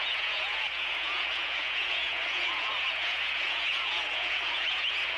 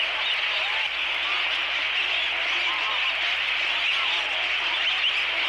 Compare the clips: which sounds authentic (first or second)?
second